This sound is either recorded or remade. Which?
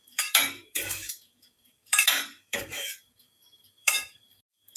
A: remade